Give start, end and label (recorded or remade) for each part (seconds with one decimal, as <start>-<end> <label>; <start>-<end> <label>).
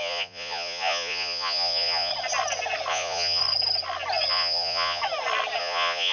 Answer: 0.0-2.1 remade; 2.1-2.9 recorded; 2.9-3.4 remade; 3.4-4.3 recorded; 4.3-5.0 remade; 5.0-5.6 recorded; 5.6-6.1 remade